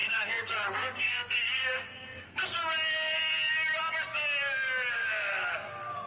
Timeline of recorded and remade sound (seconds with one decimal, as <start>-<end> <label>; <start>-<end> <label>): 0.0-2.6 remade; 2.6-5.5 recorded; 5.5-6.1 remade